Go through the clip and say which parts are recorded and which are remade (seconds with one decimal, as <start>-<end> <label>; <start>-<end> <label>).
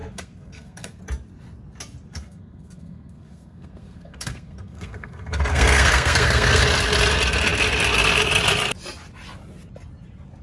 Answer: 0.0-1.0 remade; 1.0-2.1 recorded; 2.1-6.6 remade; 6.6-10.4 recorded